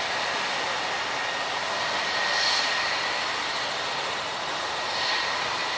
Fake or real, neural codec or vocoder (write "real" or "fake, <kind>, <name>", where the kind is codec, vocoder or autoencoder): real